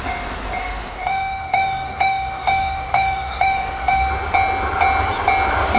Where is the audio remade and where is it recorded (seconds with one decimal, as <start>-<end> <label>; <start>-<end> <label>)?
0.0-0.6 recorded; 0.6-4.1 remade; 4.1-5.8 recorded